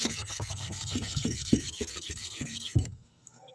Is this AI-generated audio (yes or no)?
yes